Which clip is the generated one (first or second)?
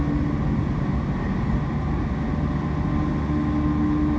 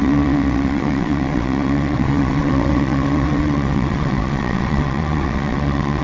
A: second